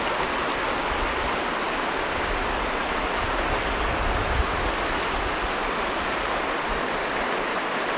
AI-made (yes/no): no